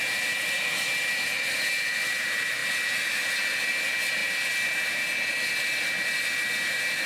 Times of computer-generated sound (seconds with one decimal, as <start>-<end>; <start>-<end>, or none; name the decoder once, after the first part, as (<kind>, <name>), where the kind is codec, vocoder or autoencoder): none